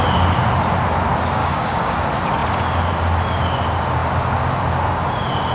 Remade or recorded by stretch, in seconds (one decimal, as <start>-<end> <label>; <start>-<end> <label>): 0.0-1.4 recorded; 1.4-2.0 remade; 2.0-5.5 recorded